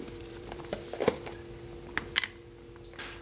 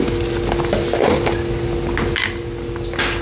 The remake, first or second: first